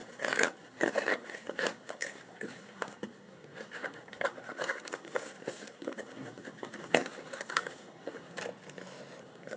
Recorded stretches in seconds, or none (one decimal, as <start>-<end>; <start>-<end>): 8.4-9.2